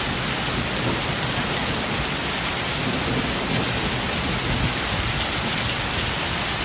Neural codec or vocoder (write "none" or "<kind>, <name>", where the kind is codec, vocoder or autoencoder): none